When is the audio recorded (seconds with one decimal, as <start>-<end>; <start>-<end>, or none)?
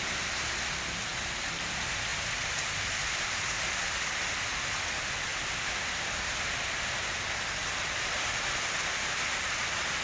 0.0-2.1; 3.9-5.3; 7.0-7.6; 9.0-10.0